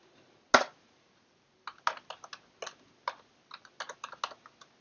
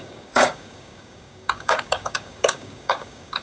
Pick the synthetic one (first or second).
second